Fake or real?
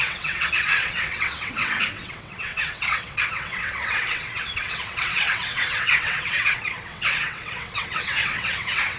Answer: fake